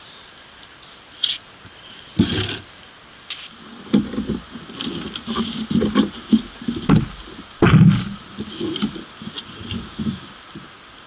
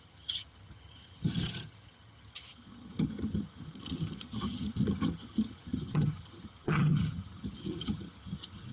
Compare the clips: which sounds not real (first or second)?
second